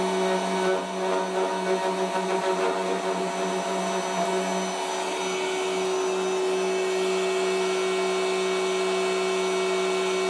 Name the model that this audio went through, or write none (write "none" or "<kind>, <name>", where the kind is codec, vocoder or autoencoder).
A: none